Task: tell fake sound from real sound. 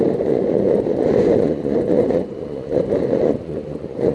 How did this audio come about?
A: fake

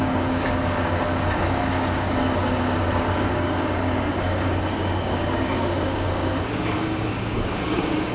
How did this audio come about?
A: fake